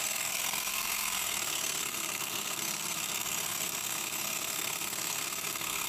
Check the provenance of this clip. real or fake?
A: fake